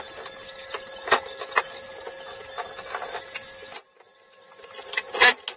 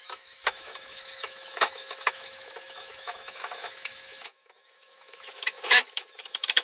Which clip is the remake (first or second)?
second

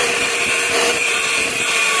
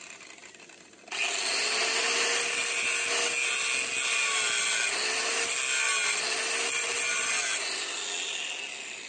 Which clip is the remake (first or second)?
first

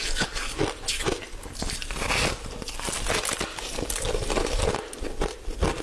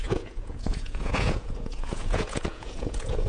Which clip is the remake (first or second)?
second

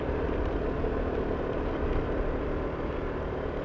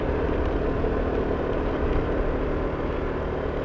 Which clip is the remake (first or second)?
first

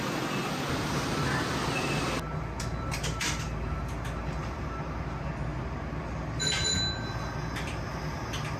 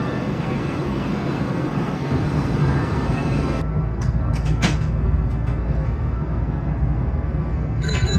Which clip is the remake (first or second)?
second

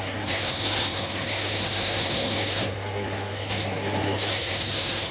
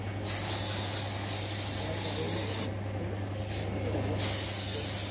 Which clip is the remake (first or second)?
first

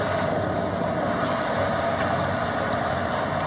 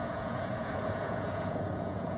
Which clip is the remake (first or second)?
second